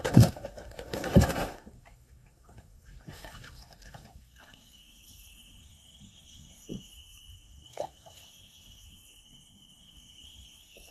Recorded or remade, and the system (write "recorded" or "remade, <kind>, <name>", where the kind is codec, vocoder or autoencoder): remade, codec, SNAC